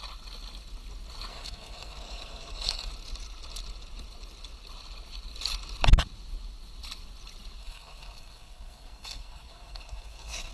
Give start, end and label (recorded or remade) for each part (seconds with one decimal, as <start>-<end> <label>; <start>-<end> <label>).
0.0-1.3 recorded; 1.3-2.9 remade; 2.9-7.6 recorded; 7.6-10.5 remade